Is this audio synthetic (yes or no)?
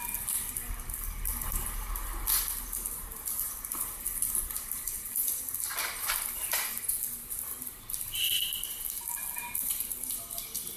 no